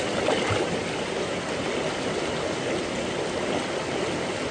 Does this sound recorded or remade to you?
recorded